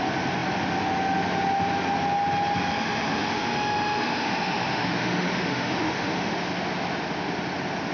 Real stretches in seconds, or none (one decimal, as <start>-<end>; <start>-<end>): 0.0-2.7; 6.3-7.9